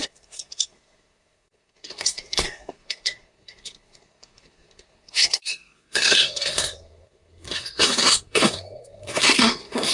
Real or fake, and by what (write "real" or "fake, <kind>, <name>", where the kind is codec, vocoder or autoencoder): fake, codec, SNAC